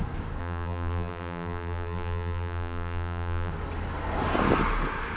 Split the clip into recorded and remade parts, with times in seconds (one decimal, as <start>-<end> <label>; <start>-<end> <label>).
0.0-0.4 recorded; 0.4-3.5 remade; 3.5-5.2 recorded